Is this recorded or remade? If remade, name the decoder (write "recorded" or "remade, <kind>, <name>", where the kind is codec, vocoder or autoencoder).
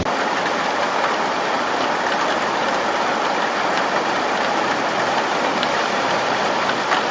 recorded